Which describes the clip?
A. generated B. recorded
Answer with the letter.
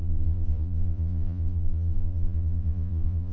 A